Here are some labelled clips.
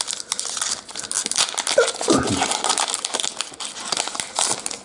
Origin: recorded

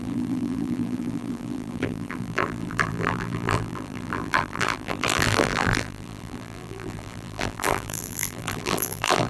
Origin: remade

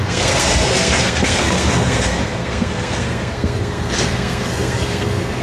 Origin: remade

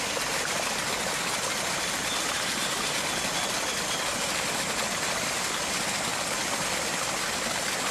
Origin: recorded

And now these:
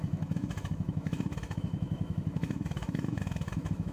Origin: remade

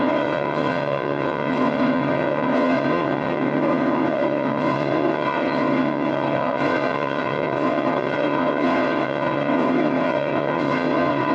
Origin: remade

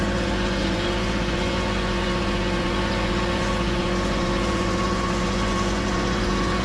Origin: remade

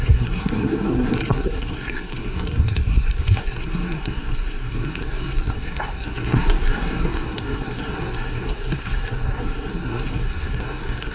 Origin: remade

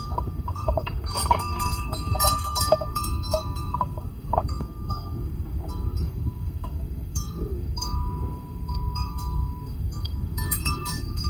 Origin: remade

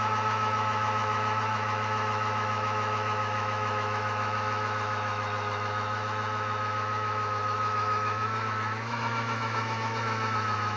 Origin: remade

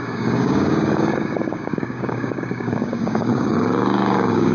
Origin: remade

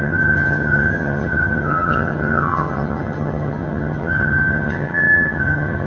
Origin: remade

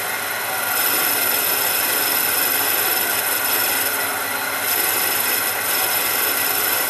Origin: recorded